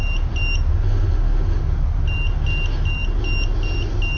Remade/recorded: recorded